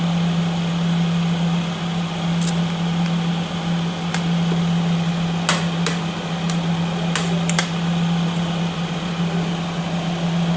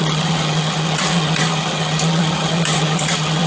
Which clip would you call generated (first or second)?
second